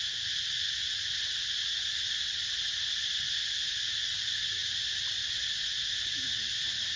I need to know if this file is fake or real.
real